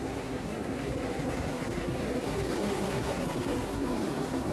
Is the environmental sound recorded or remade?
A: remade